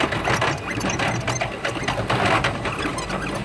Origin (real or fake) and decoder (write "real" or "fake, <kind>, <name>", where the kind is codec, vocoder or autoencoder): real